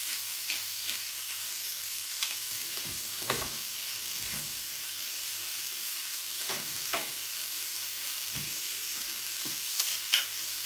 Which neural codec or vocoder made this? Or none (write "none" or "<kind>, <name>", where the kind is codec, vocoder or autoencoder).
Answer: codec, DAC